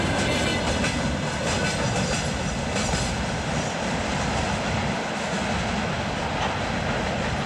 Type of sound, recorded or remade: recorded